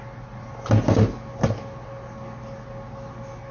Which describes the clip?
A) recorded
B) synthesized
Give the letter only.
A